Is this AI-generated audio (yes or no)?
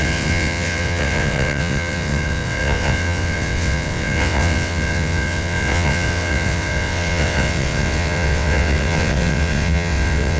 yes